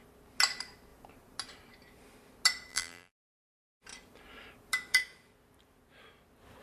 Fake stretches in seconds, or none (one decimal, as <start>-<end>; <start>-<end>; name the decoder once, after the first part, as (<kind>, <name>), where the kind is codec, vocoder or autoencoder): 2.7-3.3 (vocoder, BigVGAN v2)